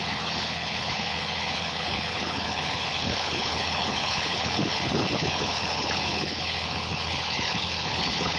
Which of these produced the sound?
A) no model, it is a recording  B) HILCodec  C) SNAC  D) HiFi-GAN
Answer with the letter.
B